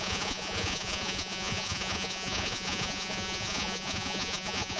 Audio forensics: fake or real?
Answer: fake